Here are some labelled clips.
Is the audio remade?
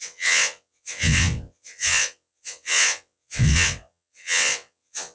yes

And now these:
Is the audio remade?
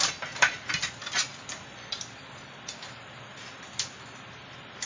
no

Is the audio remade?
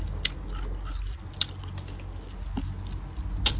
no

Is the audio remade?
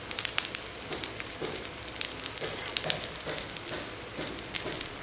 no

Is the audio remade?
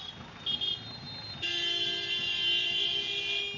no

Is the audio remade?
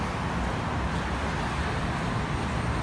no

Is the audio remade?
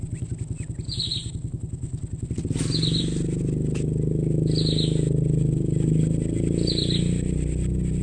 no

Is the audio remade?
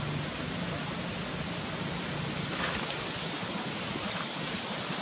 no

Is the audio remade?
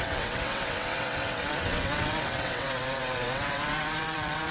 yes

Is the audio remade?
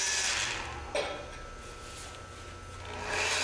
no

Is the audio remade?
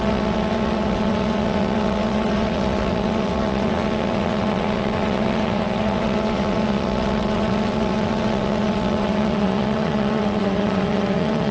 yes